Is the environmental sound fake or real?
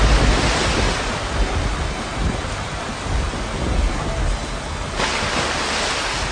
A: real